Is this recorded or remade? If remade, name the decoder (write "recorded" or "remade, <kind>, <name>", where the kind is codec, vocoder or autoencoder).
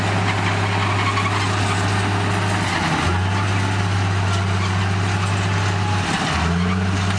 recorded